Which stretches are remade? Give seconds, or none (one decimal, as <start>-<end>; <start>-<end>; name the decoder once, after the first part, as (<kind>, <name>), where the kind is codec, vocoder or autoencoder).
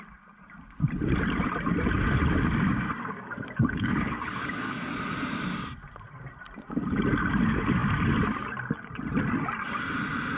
2.7-4.9 (codec, DAC)